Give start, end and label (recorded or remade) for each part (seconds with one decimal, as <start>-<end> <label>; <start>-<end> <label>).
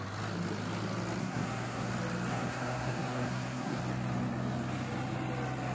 0.0-1.2 recorded; 1.2-1.9 remade; 1.9-2.3 recorded; 2.3-3.8 remade; 3.8-5.7 recorded